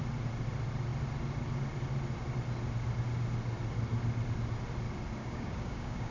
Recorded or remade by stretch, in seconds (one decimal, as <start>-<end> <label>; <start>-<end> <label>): 0.0-5.2 recorded; 5.2-6.1 remade